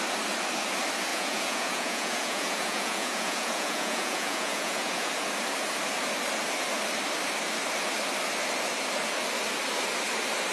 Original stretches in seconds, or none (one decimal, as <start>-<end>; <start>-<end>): 0.0-1.1; 5.1-10.5